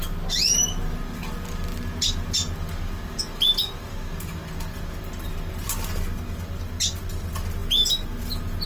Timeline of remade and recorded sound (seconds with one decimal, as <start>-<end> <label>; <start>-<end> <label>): 0.0-8.7 recorded